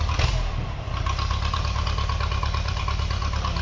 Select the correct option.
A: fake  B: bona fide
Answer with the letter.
A